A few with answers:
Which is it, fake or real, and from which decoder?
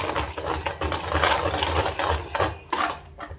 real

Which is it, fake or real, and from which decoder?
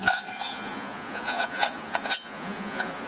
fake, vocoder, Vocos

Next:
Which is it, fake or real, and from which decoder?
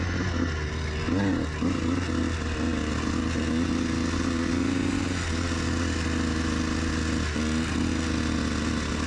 real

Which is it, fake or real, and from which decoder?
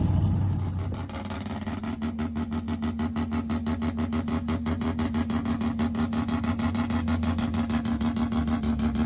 real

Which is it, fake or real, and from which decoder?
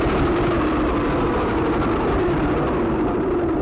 real